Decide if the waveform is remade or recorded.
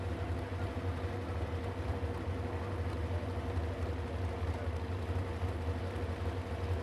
recorded